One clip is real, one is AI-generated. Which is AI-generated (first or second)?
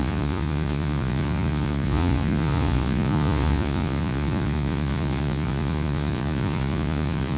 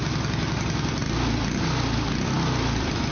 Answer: first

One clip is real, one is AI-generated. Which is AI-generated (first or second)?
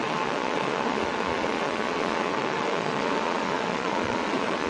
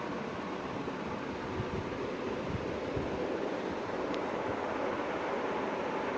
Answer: first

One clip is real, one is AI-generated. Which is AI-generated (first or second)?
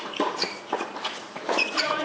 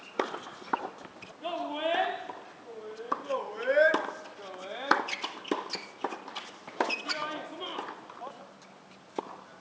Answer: first